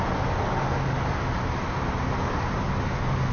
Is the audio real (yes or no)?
yes